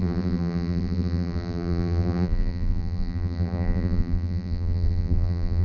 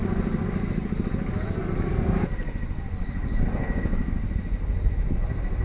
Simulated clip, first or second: first